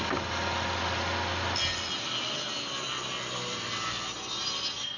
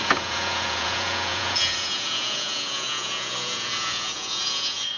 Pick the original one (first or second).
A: first